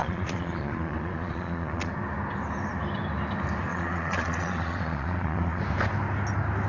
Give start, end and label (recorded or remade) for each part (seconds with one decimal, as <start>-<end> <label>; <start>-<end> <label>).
0.0-1.9 remade; 1.9-3.7 recorded; 3.7-5.6 remade; 5.6-6.7 recorded

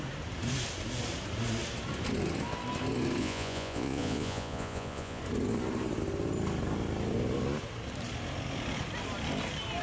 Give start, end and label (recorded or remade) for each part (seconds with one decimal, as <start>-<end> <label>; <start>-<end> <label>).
0.0-3.2 recorded; 3.2-5.2 remade; 5.2-9.8 recorded

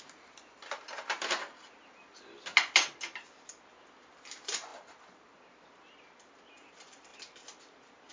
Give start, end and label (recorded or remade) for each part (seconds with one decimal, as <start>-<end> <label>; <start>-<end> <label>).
0.0-8.1 recorded

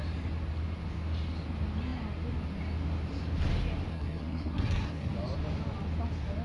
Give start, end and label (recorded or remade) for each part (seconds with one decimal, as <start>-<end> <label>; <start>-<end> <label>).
0.0-3.9 recorded; 3.9-5.1 remade; 5.1-6.4 recorded

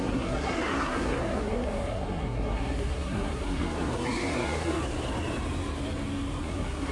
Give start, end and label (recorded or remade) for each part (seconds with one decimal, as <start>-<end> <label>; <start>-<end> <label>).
0.0-4.8 remade; 4.8-6.4 recorded; 6.4-6.9 remade

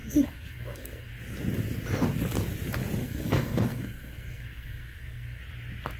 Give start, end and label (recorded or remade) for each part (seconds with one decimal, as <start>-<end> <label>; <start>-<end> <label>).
0.0-1.1 remade; 1.1-3.0 recorded; 3.0-5.4 remade; 5.4-6.0 recorded

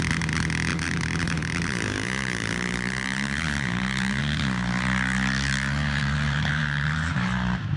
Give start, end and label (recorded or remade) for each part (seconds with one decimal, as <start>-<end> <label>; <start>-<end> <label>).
0.0-0.7 recorded; 0.7-4.2 remade; 4.2-6.0 recorded; 6.0-7.8 remade